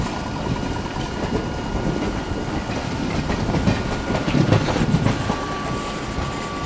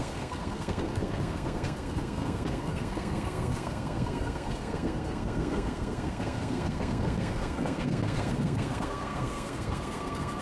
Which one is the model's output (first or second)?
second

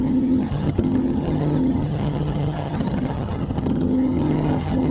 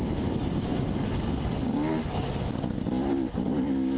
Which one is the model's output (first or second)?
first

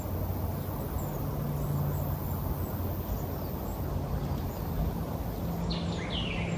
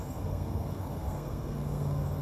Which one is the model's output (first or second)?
second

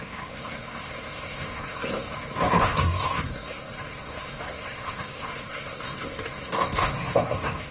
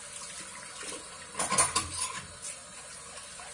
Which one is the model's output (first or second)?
first